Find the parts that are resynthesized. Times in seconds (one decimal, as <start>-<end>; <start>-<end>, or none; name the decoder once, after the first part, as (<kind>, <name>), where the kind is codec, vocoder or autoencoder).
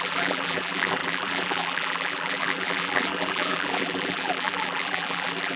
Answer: 0.0-5.6 (vocoder, BigVGAN v2)